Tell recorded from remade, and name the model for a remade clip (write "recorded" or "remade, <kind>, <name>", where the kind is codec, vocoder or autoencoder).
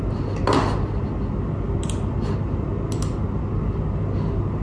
recorded